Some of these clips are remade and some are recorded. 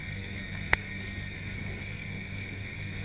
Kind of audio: remade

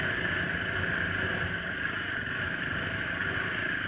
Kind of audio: recorded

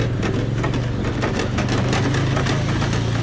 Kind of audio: recorded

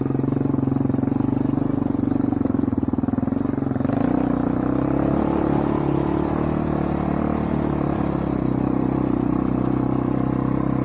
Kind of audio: recorded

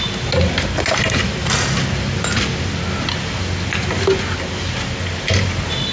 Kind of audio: recorded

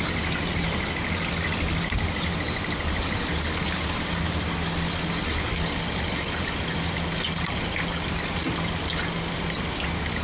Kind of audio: recorded